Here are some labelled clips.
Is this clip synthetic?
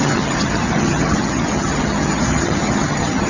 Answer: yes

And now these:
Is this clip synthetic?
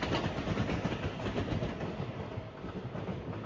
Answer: no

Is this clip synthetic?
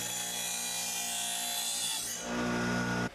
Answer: no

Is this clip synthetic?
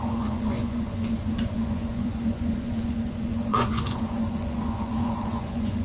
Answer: yes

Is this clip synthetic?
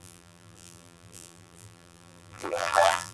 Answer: yes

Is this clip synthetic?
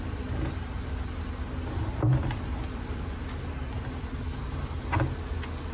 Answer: no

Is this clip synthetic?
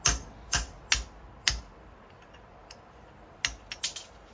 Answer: no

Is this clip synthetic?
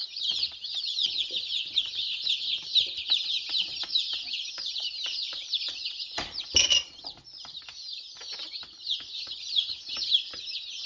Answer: no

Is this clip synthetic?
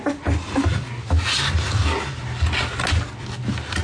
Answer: no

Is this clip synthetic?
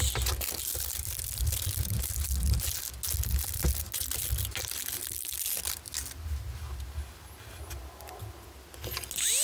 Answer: no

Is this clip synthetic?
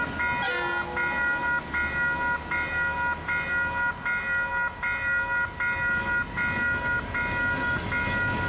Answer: no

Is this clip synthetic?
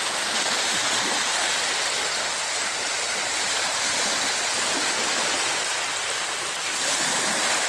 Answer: no